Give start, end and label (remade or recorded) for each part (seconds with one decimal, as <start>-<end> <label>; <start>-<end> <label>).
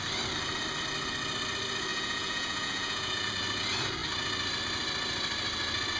0.0-1.9 recorded; 1.9-3.3 remade; 3.3-6.0 recorded